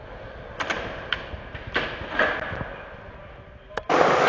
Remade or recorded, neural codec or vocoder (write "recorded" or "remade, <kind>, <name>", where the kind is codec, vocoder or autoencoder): recorded